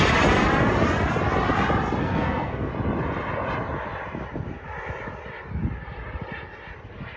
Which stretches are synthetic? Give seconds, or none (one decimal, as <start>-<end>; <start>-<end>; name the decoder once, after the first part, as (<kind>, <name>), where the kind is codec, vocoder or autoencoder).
2.0-2.7 (codec, SNAC)